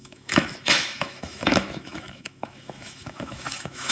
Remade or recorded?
remade